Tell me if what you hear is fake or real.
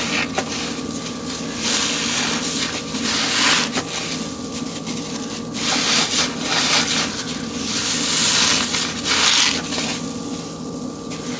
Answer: real